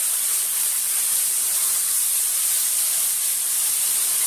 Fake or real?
fake